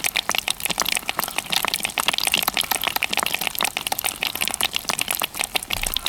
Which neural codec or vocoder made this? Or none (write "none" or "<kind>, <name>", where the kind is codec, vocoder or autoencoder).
none